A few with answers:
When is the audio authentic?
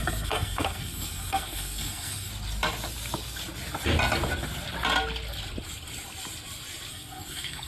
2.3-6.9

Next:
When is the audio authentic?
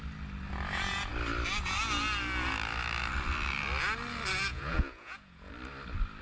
0.0-4.5; 5.5-6.2